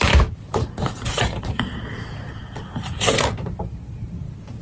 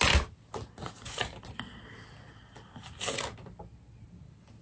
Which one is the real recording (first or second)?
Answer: second